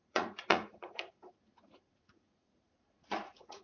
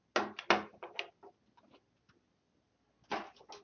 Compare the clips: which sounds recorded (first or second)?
second